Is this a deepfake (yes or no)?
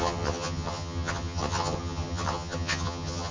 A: yes